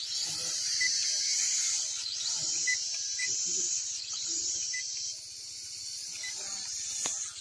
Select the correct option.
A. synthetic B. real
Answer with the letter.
B